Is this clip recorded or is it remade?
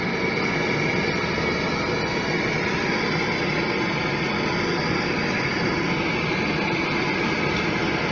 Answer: recorded